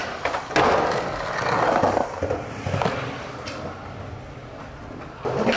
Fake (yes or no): no